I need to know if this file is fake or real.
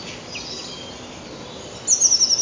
real